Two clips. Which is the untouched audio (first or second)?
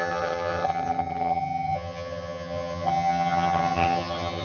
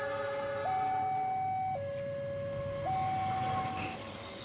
second